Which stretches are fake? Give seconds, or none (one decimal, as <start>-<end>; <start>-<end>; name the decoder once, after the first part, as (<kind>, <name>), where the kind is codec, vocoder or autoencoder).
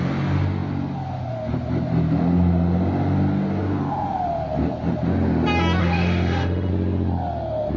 5.8-6.7 (autoencoder, DAC-VAE)